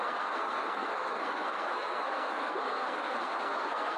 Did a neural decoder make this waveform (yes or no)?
yes